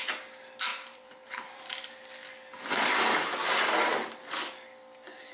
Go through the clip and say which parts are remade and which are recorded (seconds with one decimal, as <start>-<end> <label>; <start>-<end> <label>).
0.0-0.7 recorded; 0.7-1.9 remade; 1.9-5.3 recorded